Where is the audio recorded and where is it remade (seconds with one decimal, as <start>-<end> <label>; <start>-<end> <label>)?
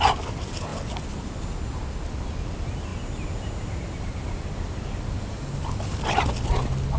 0.0-7.0 recorded